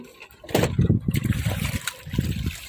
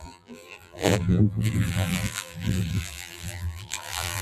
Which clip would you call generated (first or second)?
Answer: second